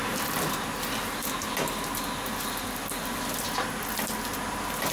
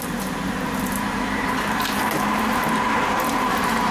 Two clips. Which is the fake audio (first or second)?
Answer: second